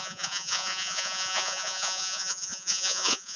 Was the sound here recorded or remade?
remade